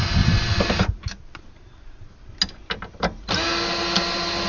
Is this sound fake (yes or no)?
no